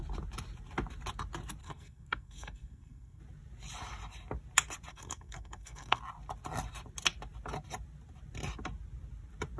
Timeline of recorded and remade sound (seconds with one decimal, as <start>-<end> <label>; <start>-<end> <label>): 0.0-1.6 recorded; 1.6-3.2 remade; 3.2-4.9 recorded; 4.9-6.0 remade; 6.0-9.6 recorded